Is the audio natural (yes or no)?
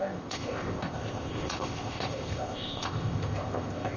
no